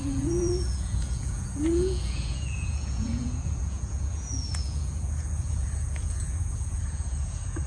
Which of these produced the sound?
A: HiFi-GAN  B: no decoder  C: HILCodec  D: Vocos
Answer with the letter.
D